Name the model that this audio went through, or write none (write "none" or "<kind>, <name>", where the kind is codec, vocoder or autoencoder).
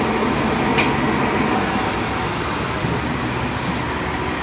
none